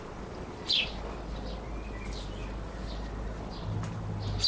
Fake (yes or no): no